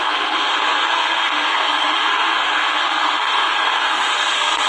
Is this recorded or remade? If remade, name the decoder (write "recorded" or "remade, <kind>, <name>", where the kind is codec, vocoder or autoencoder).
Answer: remade, codec, SNAC